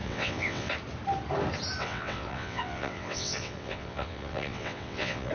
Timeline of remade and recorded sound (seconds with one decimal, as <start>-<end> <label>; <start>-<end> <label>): 0.0-0.7 remade; 0.7-1.8 recorded; 1.8-5.3 remade